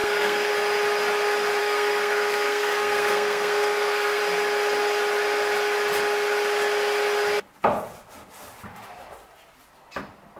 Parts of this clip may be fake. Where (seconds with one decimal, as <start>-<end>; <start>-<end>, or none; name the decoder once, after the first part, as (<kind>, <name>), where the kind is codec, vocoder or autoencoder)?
0.0-0.5 (codec, SNAC); 1.6-4.2